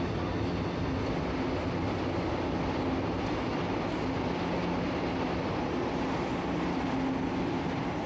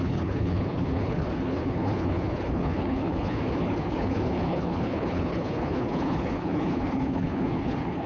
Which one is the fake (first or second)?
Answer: second